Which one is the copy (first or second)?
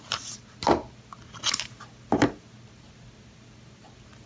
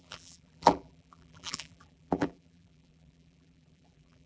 second